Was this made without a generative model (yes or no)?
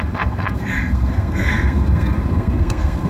no